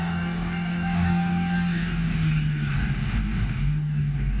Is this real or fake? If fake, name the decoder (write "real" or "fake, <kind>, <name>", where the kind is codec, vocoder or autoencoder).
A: fake, codec, DAC